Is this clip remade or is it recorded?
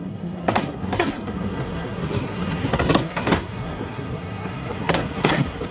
remade